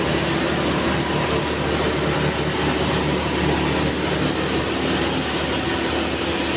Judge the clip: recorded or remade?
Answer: recorded